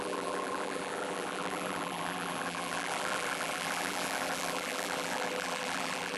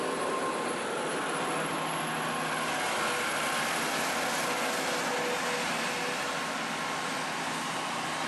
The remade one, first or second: first